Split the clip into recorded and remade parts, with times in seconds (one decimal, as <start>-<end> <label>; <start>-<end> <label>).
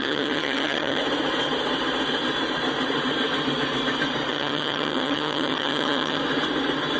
0.0-1.0 remade; 1.0-4.3 recorded; 4.3-6.2 remade; 6.2-7.0 recorded